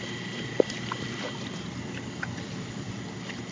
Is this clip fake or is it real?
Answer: real